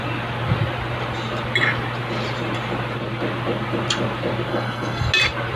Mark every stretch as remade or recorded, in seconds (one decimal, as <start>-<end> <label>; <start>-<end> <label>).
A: 0.0-4.5 recorded; 4.5-5.1 remade; 5.1-5.6 recorded